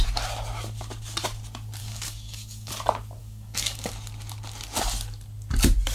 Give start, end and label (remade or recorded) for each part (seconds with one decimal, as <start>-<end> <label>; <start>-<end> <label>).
0.0-1.8 recorded; 1.8-2.7 remade; 2.7-3.2 recorded; 3.2-3.9 remade; 3.9-5.9 recorded